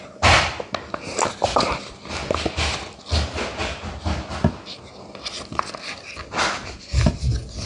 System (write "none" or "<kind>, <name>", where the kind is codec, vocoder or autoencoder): none